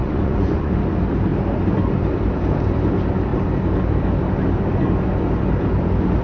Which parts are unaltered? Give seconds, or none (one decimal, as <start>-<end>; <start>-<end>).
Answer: 0.7-6.2